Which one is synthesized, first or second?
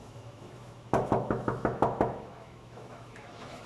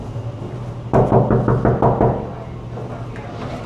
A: first